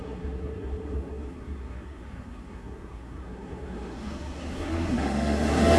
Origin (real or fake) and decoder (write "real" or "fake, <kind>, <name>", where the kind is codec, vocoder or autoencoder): fake, codec, SNAC